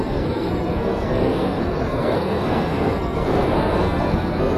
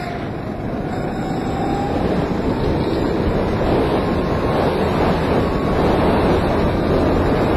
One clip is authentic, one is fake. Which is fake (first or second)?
first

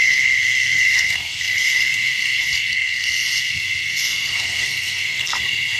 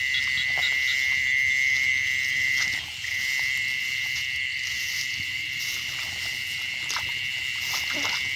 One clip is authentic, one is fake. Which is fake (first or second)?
first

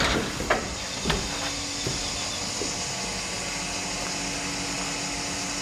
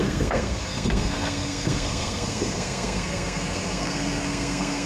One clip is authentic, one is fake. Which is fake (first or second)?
second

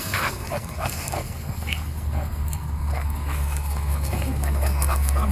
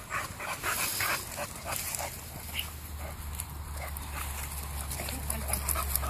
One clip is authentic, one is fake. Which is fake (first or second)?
first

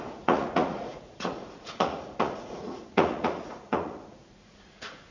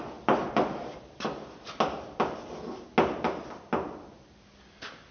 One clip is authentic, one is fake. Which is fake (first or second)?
first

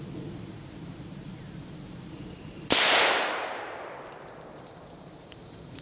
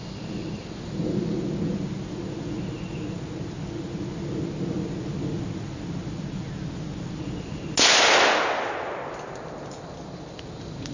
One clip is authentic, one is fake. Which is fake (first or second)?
first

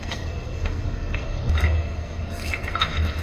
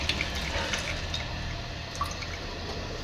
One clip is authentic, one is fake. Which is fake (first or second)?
first